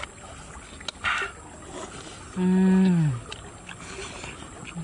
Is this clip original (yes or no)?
yes